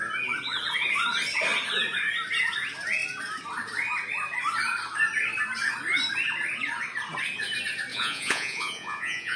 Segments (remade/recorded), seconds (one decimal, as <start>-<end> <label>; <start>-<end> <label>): 0.0-7.9 recorded; 7.9-9.4 remade